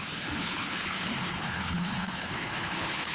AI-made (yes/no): yes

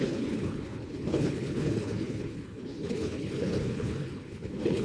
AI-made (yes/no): yes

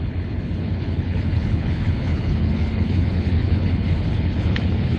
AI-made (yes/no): yes